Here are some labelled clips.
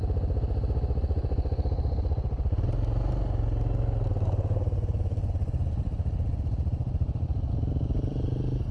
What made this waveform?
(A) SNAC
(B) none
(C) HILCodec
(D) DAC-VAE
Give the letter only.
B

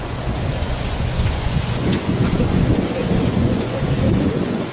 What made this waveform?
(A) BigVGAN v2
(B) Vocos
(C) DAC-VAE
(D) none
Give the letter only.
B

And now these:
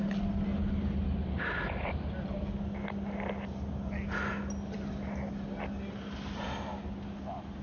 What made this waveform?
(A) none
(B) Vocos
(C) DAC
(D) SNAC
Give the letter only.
A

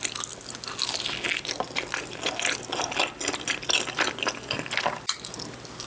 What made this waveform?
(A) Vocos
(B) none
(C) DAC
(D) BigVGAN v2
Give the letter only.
B